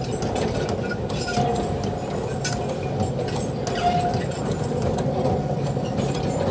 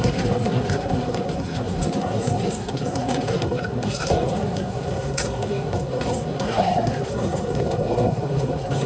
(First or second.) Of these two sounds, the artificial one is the second